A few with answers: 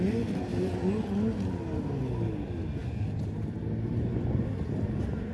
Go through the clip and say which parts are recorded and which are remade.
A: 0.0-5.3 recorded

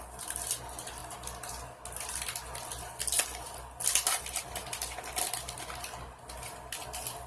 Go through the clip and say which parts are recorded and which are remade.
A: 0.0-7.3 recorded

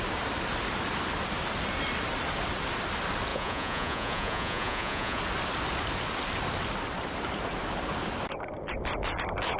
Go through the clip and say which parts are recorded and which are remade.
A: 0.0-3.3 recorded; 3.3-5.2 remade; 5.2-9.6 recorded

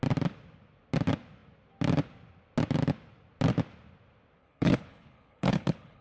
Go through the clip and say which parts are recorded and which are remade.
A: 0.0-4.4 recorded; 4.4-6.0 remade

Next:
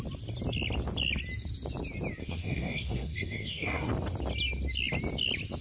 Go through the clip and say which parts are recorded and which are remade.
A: 0.0-2.2 recorded; 2.2-3.9 remade; 3.9-5.6 recorded

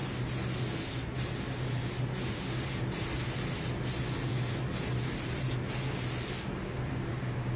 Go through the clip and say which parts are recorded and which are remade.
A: 0.0-2.3 recorded; 2.3-2.7 remade; 2.7-7.1 recorded; 7.1-7.6 remade